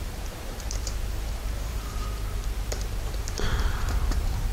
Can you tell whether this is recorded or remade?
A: remade